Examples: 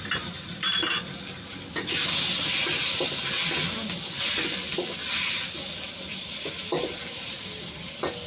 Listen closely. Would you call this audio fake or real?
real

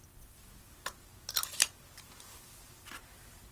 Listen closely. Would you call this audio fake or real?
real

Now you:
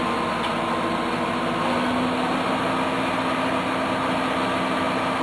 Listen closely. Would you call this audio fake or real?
real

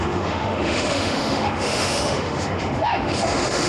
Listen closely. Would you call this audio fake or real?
fake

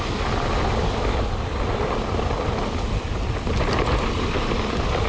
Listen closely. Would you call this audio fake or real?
real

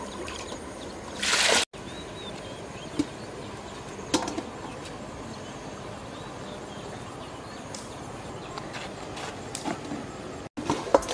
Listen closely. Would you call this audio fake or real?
real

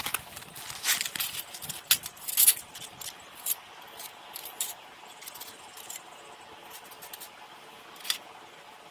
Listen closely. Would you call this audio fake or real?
real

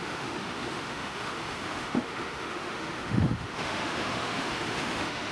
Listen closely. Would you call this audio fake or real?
fake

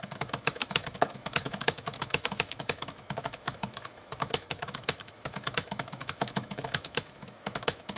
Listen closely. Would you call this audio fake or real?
fake